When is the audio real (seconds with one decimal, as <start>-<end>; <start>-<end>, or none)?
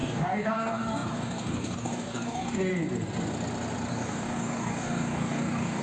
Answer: 2.7-3.9